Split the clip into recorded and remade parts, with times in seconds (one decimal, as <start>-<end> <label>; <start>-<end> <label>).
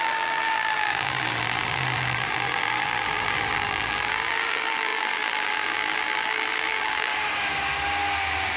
0.0-7.1 remade; 7.1-8.6 recorded